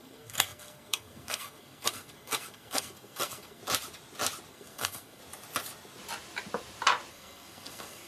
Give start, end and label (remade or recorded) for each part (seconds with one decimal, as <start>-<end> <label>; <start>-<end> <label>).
0.0-3.6 remade; 3.6-4.5 recorded; 4.5-5.2 remade; 5.2-7.1 recorded; 7.1-8.1 remade